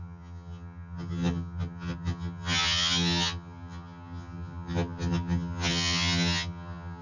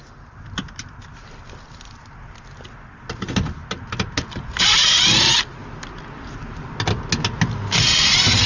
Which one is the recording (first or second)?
second